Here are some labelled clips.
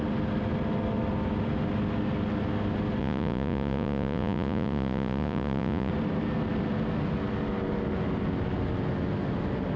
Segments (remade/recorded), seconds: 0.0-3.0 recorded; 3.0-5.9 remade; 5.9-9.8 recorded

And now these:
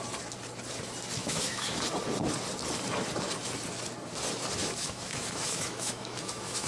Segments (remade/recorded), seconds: 0.0-1.2 recorded; 1.2-1.8 remade; 1.8-4.6 recorded; 4.6-6.7 remade

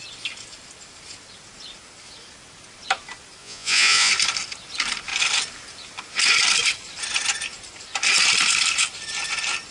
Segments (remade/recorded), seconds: 0.0-3.4 recorded; 3.4-4.1 remade; 4.1-9.7 recorded

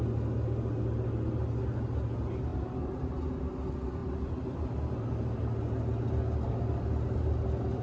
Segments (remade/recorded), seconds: 0.0-7.8 recorded

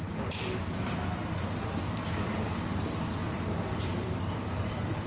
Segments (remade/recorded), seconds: 0.0-0.6 remade; 0.6-2.1 recorded; 2.1-5.1 remade